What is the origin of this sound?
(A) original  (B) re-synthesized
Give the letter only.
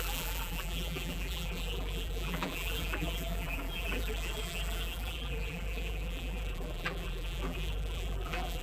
B